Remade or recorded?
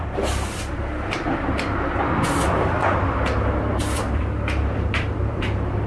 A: remade